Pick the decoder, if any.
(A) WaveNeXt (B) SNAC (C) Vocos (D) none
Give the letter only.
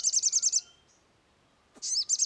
D